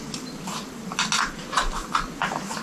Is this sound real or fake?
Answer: real